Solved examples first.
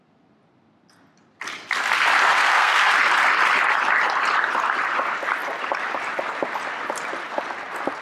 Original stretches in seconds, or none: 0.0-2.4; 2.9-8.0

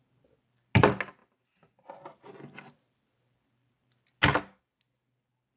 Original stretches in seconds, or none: 0.0-5.6